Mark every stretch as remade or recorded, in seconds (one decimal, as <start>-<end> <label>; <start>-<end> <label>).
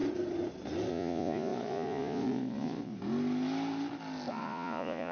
0.0-0.9 recorded; 0.9-2.9 remade; 2.9-4.3 recorded; 4.3-5.1 remade